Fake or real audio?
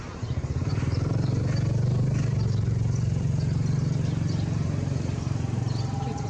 fake